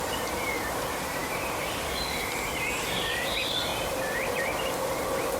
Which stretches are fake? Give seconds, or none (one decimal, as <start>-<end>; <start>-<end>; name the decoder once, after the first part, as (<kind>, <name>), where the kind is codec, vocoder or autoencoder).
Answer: 0.0-5.4 (vocoder, BigVGAN v2)